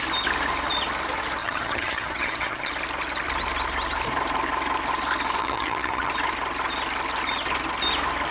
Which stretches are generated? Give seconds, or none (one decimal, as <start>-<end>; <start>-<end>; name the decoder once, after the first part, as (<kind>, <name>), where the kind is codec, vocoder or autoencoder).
1.4-2.7 (vocoder, HiFi-GAN); 5.4-6.1